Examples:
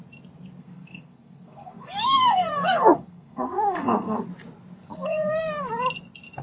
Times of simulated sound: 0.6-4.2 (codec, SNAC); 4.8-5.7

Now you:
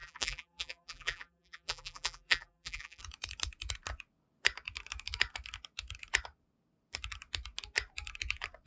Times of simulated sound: 0.0-3.0 (vocoder, BigVGAN v2)

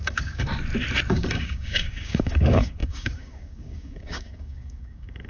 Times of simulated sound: 0.0-0.5 (codec, DAC); 1.1-5.3

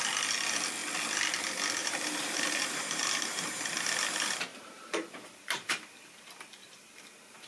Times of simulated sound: 1.8-3.6 (vocoder, BigVGAN v2); 4.5-6.1

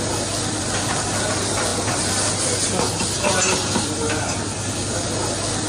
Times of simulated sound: none

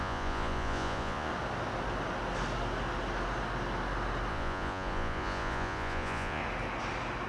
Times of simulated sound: 0.0-1.3 (vocoder, Vocos); 4.3-6.4